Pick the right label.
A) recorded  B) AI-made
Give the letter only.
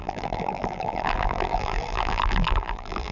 B